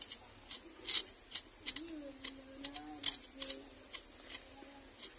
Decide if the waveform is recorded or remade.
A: recorded